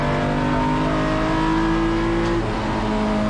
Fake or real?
real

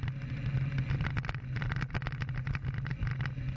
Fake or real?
real